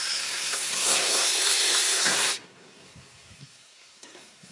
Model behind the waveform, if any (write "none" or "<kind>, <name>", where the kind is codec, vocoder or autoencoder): codec, SNAC